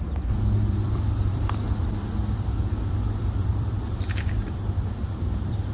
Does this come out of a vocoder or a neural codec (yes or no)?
yes